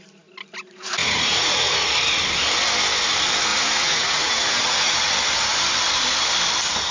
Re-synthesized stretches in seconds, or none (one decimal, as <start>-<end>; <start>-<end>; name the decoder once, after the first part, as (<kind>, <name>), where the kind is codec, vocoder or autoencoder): 1.0-1.9 (vocoder, Vocos); 3.5-5.1